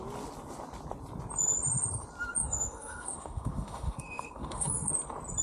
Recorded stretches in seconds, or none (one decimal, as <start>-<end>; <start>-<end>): 0.0-2.4; 4.9-5.4